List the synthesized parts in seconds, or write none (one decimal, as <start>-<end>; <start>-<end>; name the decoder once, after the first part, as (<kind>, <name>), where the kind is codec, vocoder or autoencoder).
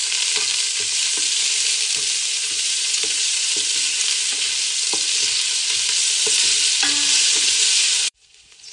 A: 2.3-3.5 (vocoder, Vocos); 7.1-8.7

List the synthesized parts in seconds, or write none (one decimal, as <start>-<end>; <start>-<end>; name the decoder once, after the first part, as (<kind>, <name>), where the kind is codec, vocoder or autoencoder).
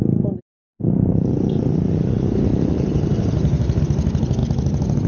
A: 0.7-3.8 (vocoder, BigVGAN v2)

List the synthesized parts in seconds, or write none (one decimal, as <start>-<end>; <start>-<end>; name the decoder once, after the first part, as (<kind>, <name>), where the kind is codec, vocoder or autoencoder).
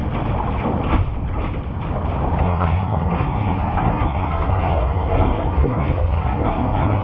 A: 2.4-7.0 (codec, SNAC)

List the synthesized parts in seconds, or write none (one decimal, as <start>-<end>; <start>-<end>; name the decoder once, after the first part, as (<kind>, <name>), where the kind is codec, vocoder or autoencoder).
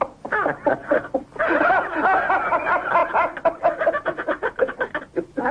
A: 0.0-0.8 (vocoder, BigVGAN v2); 1.4-2.0; 2.6-5.5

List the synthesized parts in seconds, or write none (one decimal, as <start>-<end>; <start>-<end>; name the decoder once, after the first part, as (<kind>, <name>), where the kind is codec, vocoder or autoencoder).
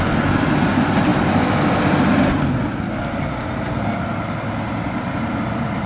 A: none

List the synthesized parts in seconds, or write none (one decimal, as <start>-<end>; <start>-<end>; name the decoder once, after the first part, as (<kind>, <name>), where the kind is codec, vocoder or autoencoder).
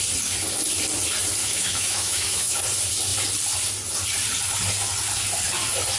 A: 1.4-2.6 (autoencoder, DAC-VAE)